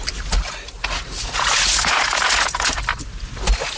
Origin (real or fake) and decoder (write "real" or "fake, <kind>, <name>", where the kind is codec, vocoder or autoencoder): real